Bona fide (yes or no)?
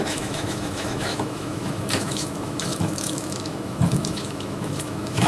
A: no